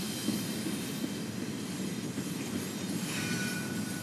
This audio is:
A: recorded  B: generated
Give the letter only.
A